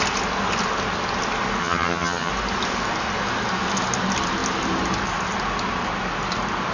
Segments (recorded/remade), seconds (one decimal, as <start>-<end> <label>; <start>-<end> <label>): 0.0-1.6 recorded; 1.6-2.3 remade; 2.3-6.7 recorded